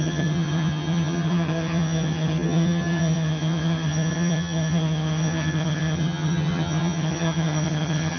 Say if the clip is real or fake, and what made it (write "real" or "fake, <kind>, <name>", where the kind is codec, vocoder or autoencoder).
fake, vocoder, HiFi-GAN